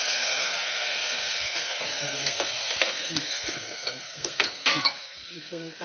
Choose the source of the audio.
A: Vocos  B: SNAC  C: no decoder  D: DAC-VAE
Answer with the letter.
B